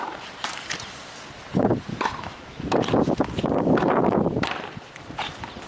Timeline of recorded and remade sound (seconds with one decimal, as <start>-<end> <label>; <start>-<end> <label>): 0.0-1.9 recorded; 1.9-2.7 remade; 2.7-5.7 recorded